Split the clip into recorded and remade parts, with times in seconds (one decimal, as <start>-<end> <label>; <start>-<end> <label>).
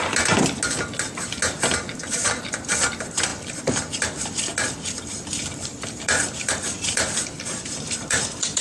0.0-2.1 recorded; 2.1-8.6 remade